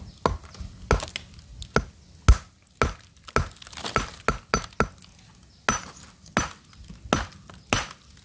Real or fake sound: real